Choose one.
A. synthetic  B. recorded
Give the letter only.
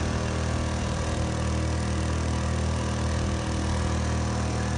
B